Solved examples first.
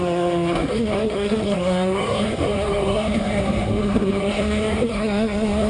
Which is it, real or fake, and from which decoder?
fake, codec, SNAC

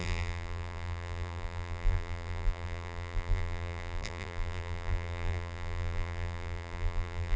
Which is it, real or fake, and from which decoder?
fake, vocoder, BigVGAN v2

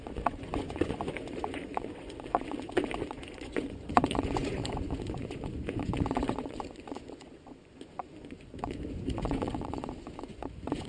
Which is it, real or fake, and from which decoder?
fake, vocoder, Vocos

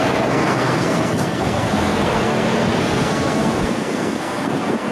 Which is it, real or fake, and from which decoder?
fake, codec, SNAC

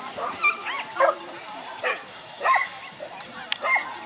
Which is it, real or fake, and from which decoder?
real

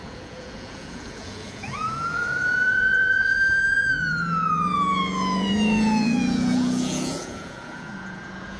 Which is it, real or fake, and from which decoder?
fake, vocoder, Vocos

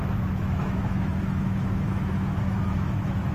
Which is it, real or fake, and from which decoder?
fake, autoencoder, DAC-VAE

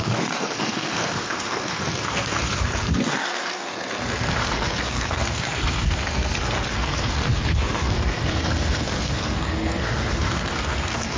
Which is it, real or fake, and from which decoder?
fake, codec, SNAC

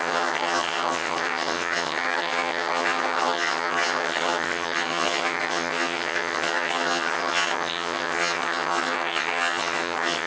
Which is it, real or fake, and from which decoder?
fake, vocoder, HiFi-GAN